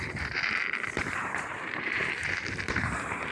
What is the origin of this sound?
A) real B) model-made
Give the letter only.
B